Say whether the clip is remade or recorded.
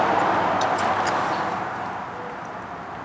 recorded